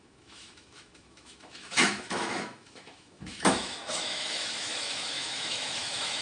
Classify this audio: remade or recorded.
remade